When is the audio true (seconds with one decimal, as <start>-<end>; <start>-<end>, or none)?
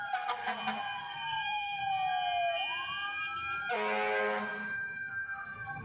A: 0.5-1.0; 1.8-5.1